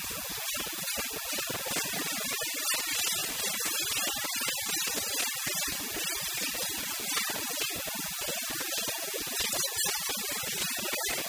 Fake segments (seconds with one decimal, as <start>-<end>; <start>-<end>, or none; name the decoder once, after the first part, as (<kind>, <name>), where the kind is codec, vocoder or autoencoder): 3.2-3.9 (vocoder, BigVGAN v2)

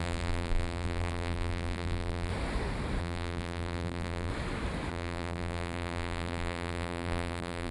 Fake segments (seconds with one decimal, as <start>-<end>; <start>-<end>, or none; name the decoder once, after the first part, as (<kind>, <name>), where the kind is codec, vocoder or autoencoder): 0.0-2.3 (vocoder, BigVGAN v2); 3.0-4.3; 4.9-7.7

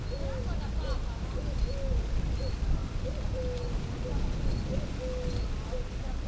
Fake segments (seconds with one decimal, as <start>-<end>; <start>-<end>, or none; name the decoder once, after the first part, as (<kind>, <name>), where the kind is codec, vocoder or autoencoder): 2.8-3.4 (vocoder, BigVGAN v2)

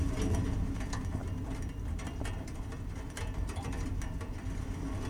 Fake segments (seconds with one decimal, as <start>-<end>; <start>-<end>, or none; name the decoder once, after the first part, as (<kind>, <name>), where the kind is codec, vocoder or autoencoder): 1.2-3.9 (vocoder, BigVGAN v2)